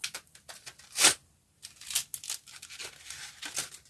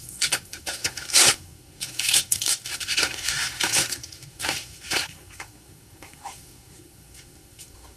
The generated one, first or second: second